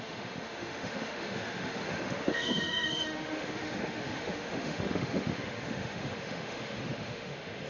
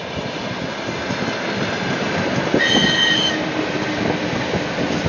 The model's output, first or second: first